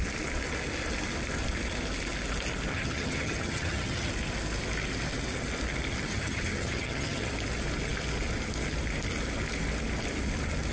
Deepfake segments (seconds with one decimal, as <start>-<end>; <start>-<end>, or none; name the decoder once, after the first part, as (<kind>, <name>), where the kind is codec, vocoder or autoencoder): 2.7-4.1 (vocoder, HiFi-GAN); 5.9-7.3